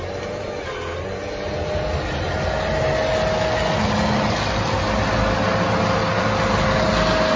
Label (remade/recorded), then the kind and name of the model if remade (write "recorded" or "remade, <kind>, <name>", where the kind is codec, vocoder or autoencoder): recorded